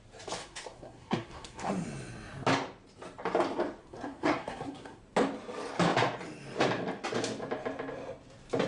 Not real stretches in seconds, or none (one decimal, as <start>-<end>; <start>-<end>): 0.4-1.7; 3.8-5.0